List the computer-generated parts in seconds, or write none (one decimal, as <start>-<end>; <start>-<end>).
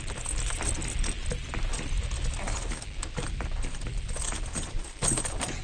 none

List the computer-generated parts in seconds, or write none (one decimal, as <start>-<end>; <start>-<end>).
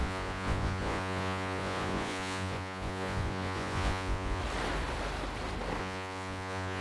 0.0-4.4; 5.8-6.8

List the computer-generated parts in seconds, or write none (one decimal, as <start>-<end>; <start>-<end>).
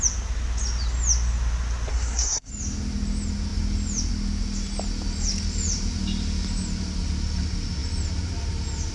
1.9-2.5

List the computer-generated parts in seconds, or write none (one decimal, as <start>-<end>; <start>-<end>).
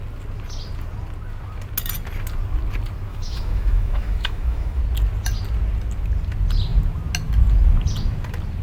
3.1-4.8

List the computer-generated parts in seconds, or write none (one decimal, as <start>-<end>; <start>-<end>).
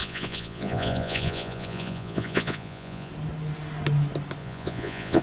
0.0-3.1; 4.4-5.2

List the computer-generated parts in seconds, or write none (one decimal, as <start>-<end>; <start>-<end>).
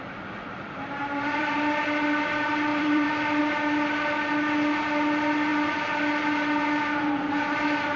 1.0-1.8; 2.7-3.4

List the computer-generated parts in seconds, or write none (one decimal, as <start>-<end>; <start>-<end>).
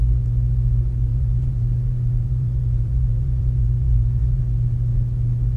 1.1-4.4